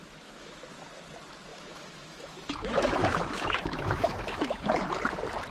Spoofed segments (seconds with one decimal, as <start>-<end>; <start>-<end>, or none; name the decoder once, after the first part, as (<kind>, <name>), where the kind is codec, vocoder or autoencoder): 0.0-0.6 (autoencoder, DAC-VAE); 1.5-4.8